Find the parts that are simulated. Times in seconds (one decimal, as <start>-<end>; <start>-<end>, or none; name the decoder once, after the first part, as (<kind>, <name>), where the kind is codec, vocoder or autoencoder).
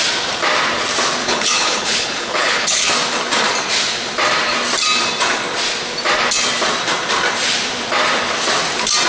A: 1.2-2.9 (codec, HILCodec)